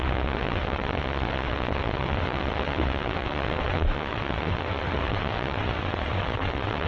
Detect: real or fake fake